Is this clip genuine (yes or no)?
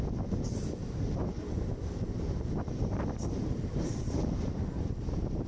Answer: yes